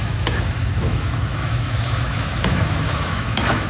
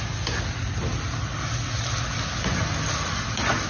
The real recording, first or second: second